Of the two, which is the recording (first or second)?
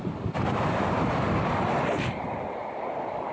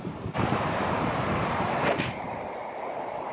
first